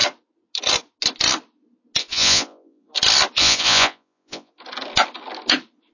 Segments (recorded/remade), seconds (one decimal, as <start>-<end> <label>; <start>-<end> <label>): 0.0-2.0 recorded; 2.0-2.9 remade; 2.9-3.4 recorded; 3.4-4.5 remade; 4.5-5.9 recorded